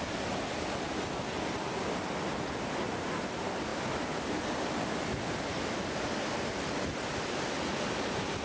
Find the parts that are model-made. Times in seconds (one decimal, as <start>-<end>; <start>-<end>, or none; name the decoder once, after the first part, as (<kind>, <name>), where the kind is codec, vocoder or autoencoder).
none